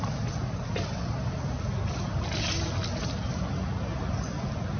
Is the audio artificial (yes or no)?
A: no